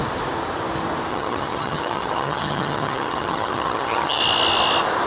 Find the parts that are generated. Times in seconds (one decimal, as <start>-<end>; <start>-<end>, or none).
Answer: 1.1-4.2